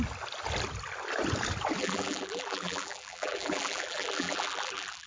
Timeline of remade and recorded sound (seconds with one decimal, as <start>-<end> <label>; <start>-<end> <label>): 0.0-1.8 recorded; 1.8-5.1 remade